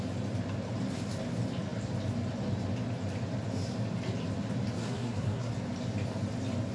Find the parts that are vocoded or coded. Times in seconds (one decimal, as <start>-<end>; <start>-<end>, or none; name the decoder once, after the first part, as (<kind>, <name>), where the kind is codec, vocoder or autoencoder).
4.8-5.5 (codec, SNAC)